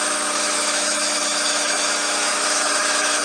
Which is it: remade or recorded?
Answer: remade